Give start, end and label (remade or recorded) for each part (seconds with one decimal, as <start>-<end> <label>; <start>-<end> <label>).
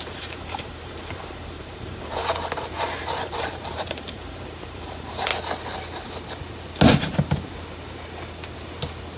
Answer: 0.0-2.2 remade; 2.2-3.2 recorded; 3.2-5.3 remade; 5.3-9.2 recorded